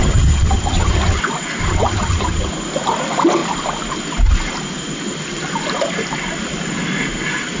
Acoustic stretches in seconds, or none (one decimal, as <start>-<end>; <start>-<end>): 1.2-1.6; 2.5-7.6